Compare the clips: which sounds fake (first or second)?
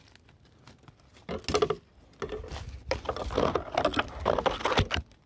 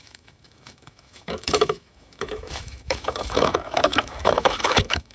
second